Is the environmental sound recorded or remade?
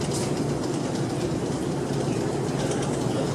remade